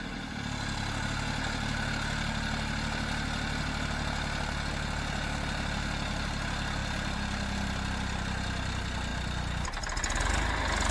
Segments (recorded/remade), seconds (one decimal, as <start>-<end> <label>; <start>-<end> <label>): 0.0-10.9 recorded